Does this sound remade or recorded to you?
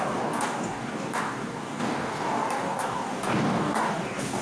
remade